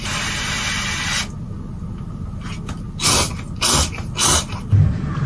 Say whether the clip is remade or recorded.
recorded